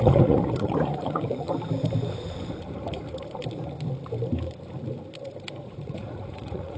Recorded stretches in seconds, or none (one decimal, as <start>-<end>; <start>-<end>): 1.5-5.6